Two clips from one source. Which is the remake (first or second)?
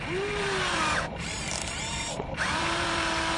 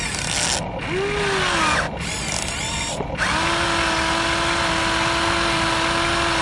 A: first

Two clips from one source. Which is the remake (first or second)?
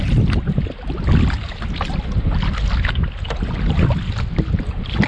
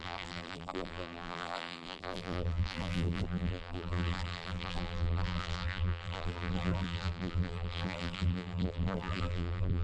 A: second